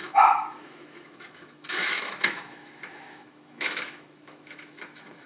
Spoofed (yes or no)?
yes